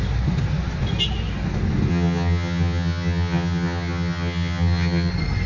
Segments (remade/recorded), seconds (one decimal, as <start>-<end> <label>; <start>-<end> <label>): 0.0-1.9 recorded; 1.9-5.1 remade; 5.1-5.5 recorded